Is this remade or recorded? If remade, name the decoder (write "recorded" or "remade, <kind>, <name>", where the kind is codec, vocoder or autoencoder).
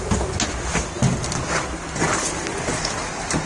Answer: recorded